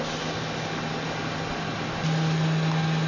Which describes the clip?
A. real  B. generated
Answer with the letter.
A